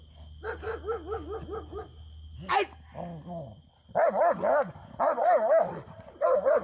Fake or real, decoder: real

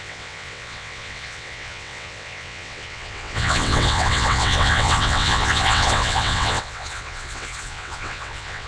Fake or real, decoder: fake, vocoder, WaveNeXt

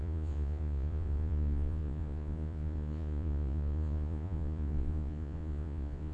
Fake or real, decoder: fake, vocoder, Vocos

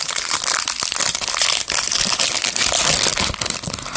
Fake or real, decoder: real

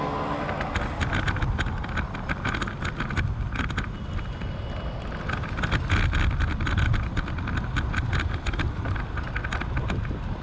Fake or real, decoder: real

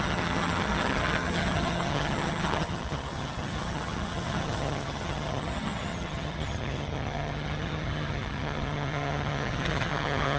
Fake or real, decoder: fake, vocoder, HiFi-GAN